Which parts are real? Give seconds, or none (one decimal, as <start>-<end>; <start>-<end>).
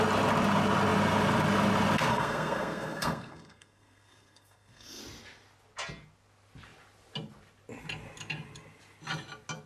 0.0-2.1; 5.0-9.7